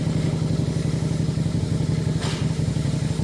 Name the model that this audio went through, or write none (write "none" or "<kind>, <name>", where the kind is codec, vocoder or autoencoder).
none